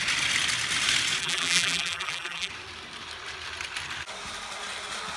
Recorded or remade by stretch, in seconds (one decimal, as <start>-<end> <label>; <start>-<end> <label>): 0.0-1.2 recorded; 1.2-2.5 remade; 2.5-5.2 recorded